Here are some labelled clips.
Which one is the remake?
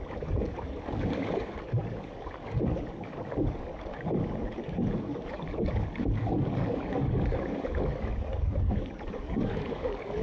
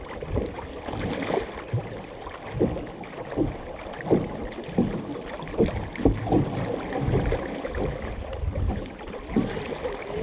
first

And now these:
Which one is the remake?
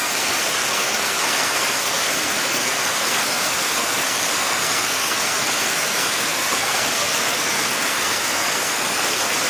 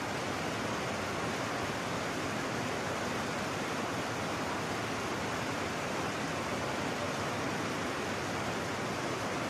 first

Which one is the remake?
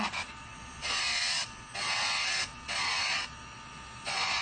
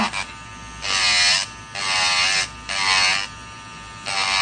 first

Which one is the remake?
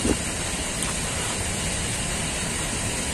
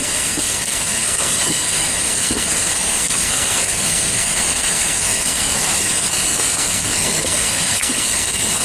second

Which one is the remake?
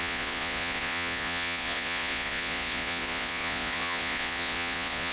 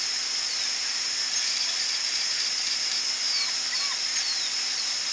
first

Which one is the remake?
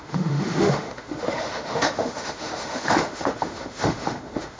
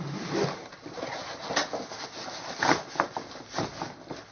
first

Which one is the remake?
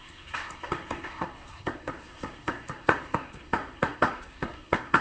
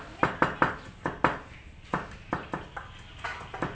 first